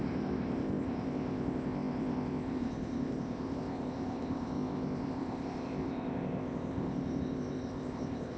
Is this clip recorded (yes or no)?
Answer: no